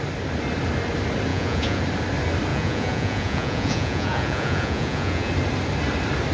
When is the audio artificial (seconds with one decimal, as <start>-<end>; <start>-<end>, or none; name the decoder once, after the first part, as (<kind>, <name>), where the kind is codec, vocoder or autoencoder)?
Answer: 1.3-1.8 (vocoder, Vocos); 2.5-5.3